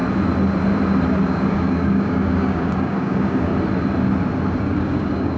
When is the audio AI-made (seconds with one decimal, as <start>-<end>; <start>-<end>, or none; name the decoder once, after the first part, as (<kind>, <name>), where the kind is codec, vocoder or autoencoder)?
1.2-3.5 (codec, DAC); 4.5-5.4